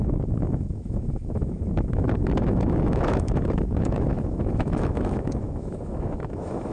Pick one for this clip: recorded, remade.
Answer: remade